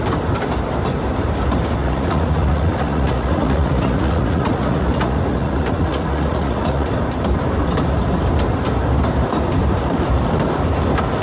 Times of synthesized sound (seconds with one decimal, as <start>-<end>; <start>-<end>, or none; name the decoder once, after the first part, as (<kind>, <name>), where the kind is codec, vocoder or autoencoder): 1.8-6.9 (vocoder, Vocos)